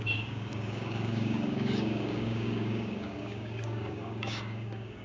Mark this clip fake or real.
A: fake